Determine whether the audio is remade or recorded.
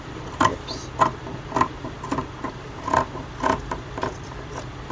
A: recorded